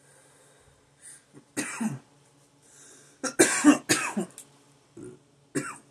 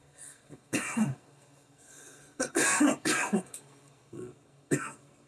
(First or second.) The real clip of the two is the first